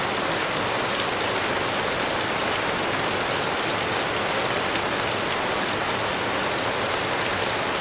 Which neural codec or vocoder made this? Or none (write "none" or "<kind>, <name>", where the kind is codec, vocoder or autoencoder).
none